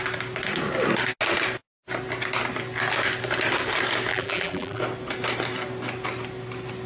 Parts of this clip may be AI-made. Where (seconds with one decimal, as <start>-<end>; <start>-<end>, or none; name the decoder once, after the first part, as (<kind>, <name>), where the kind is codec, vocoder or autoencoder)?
4.1-4.8 (vocoder, BigVGAN v2)